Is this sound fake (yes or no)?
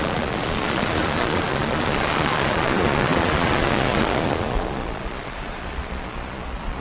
yes